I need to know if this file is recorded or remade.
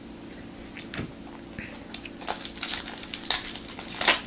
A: recorded